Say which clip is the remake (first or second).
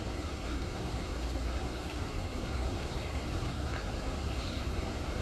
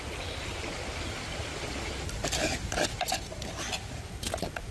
first